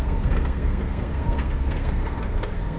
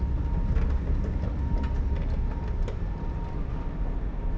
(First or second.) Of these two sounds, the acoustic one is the second